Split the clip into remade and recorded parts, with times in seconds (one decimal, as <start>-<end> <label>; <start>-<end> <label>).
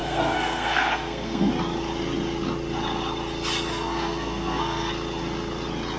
0.0-1.5 remade; 1.5-3.7 recorded; 3.7-4.9 remade; 4.9-6.0 recorded